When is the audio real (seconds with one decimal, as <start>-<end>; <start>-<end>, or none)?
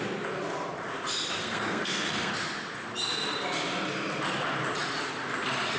0.0-1.4; 2.3-5.8